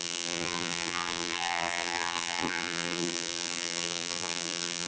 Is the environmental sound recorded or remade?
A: remade